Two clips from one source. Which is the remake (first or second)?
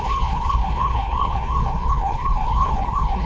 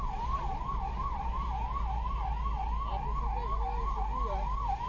first